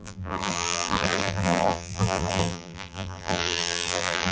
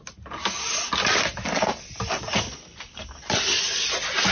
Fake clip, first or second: first